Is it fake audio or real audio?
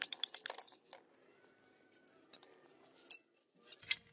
real